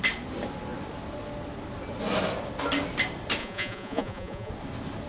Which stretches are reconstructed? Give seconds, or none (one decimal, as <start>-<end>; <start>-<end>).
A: 3.4-4.5